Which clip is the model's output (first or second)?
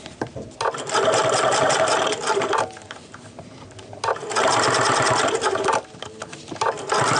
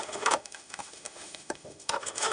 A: second